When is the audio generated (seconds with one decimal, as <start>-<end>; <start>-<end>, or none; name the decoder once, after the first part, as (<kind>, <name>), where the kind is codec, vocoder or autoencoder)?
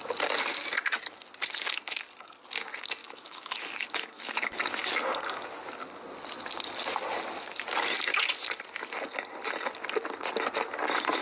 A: 3.0-4.6 (autoencoder, DAC-VAE)